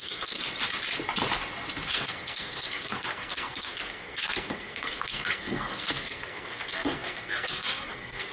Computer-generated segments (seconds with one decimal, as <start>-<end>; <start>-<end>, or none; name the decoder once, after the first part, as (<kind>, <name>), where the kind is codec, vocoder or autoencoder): 0.0-0.4 (codec, SNAC); 1.9-8.3